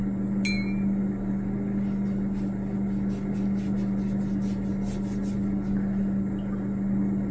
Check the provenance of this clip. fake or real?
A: real